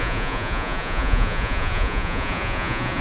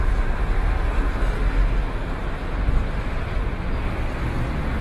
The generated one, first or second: first